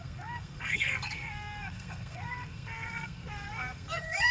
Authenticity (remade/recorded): remade